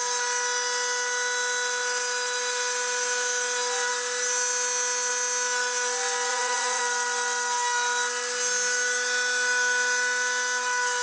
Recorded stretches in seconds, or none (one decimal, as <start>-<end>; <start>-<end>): 0.0-6.3; 6.8-11.0